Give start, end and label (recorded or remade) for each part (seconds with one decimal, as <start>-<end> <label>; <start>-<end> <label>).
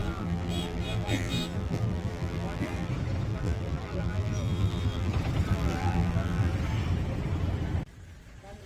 0.0-2.9 remade; 2.9-3.3 recorded; 3.3-5.1 remade; 5.1-5.5 recorded; 5.5-6.5 remade; 6.5-8.7 recorded